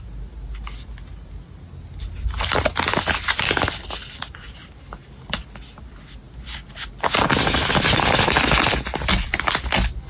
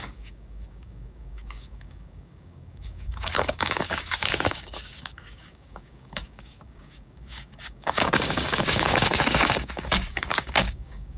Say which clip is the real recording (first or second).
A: first